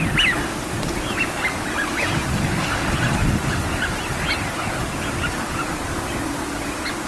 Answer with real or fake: real